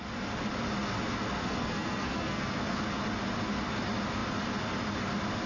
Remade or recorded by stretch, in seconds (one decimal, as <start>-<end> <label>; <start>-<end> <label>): 0.0-1.4 recorded; 1.4-2.8 remade; 2.8-5.5 recorded